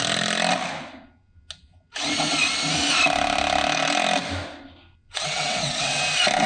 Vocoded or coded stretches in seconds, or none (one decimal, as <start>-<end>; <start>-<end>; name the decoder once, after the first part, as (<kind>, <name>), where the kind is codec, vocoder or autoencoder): 5.0-6.0 (vocoder, WaveNeXt)

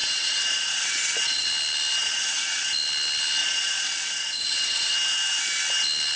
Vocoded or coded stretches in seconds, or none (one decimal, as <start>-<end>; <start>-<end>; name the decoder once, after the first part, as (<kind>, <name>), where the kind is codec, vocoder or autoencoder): 0.0-1.5 (vocoder, WaveNeXt); 2.0-2.7; 3.4-4.9